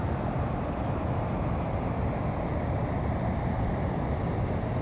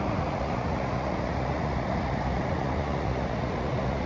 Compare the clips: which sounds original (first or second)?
first